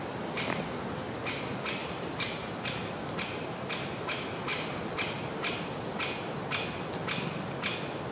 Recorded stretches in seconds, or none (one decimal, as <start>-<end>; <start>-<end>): 0.0-1.8; 2.5-8.1